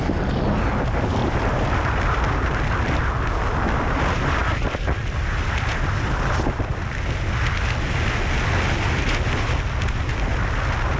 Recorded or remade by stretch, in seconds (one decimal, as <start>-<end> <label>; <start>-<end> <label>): 0.0-1.2 recorded; 1.2-3.0 remade; 3.0-4.4 recorded; 4.4-6.7 remade; 6.7-11.0 recorded